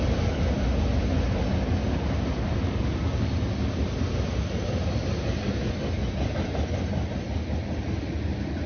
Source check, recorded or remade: recorded